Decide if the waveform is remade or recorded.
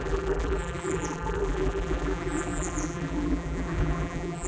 remade